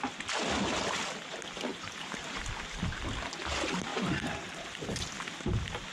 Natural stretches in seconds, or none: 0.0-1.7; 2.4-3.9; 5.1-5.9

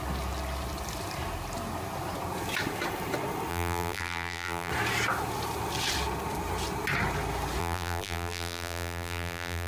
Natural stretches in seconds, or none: 0.0-3.5; 4.7-7.6

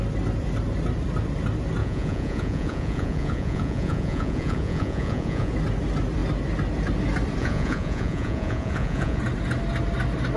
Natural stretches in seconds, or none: 0.0-1.8; 5.5-7.4; 9.2-10.4

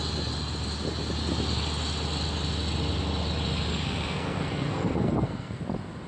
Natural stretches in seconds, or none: 0.0-3.7; 5.6-6.1

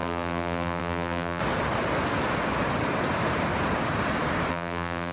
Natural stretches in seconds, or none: 1.4-4.5

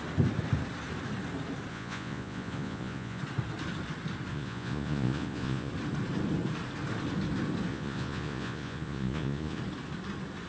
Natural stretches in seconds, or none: 0.0-1.7; 3.2-4.3; 5.7-7.7; 9.6-10.5

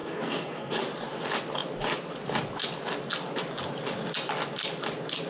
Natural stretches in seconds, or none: 0.8-5.3

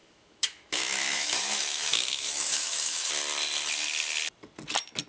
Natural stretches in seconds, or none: 3.1-5.1